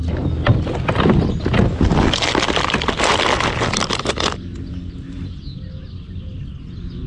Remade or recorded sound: recorded